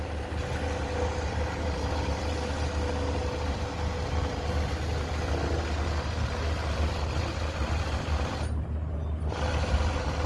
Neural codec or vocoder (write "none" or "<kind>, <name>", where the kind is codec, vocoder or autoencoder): none